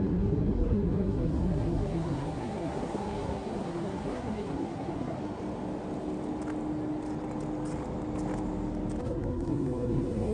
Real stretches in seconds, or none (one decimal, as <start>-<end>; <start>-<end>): 5.2-9.0